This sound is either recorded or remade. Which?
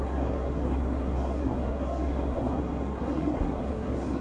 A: remade